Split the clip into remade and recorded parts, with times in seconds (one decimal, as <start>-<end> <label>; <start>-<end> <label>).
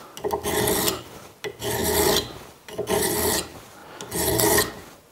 0.0-5.1 recorded